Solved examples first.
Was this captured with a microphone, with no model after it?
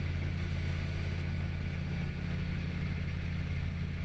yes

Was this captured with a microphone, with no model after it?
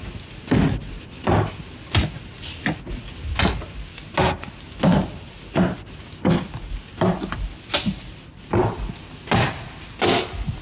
yes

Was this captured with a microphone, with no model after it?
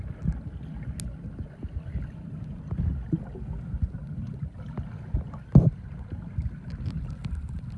yes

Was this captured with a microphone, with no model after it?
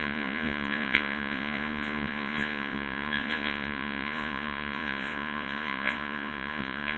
no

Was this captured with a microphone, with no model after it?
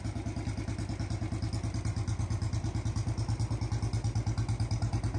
yes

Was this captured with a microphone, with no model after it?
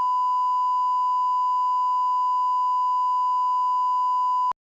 yes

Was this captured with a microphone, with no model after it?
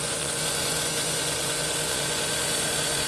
no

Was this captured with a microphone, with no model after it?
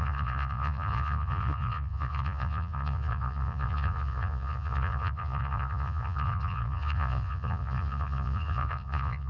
no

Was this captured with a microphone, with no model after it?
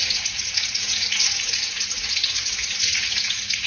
no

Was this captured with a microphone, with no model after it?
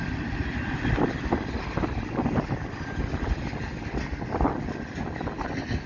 yes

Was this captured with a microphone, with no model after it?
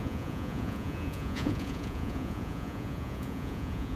no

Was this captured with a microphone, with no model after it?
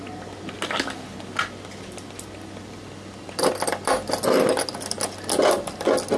yes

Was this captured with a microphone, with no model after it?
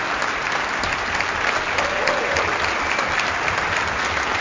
yes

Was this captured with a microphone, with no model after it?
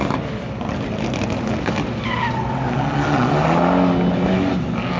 yes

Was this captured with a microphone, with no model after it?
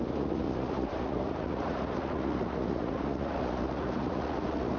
no